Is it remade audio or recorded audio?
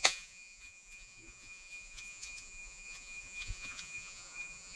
remade